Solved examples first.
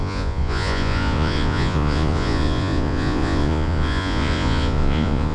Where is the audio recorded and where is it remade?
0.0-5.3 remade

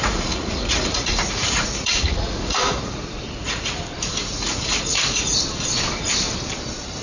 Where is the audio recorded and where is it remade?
0.0-3.8 remade; 3.8-4.2 recorded; 4.2-5.4 remade; 5.4-7.0 recorded

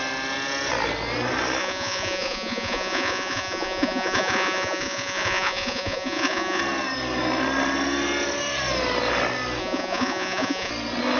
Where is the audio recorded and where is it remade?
0.0-1.6 recorded; 1.6-6.6 remade; 6.6-9.6 recorded; 9.6-10.7 remade; 10.7-11.2 recorded

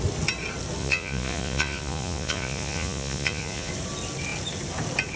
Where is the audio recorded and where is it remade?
0.0-0.8 recorded; 0.8-3.7 remade; 3.7-5.2 recorded

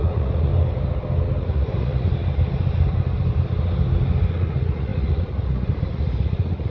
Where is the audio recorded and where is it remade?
0.0-0.5 remade; 0.5-1.4 recorded; 1.4-2.1 remade; 2.1-4.3 recorded; 4.3-6.7 remade

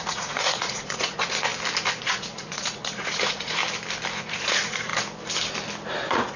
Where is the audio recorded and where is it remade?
0.0-1.5 remade; 1.5-2.0 recorded; 2.0-3.6 remade; 3.6-4.2 recorded; 4.2-4.9 remade; 4.9-6.0 recorded; 6.0-6.4 remade

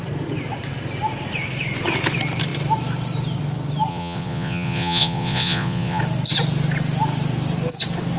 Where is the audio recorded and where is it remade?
0.0-3.9 recorded; 3.9-6.0 remade; 6.0-8.2 recorded

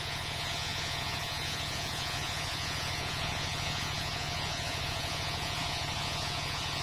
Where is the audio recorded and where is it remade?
0.0-6.8 remade